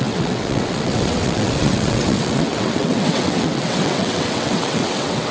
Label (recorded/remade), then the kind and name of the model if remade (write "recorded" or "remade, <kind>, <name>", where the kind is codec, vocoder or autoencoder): remade, vocoder, WaveNeXt